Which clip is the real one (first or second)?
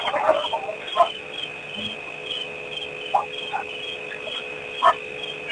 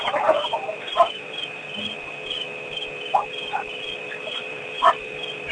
first